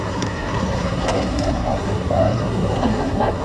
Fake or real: fake